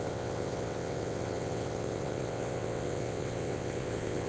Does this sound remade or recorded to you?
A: remade